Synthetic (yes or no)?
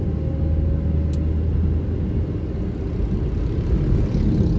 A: no